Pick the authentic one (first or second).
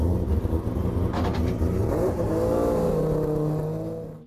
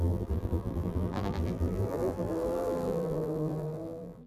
first